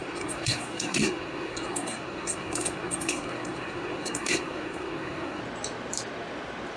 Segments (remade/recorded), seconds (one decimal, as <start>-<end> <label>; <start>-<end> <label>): 0.0-5.4 remade; 5.4-6.8 recorded